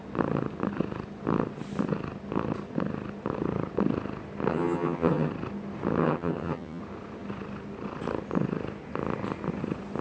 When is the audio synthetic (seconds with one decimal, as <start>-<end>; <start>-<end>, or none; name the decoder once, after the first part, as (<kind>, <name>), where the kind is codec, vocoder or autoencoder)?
4.5-5.3 (vocoder, HiFi-GAN); 6.0-6.8